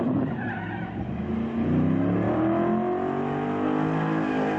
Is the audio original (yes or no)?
yes